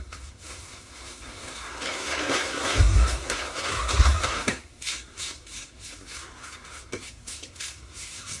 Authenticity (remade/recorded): remade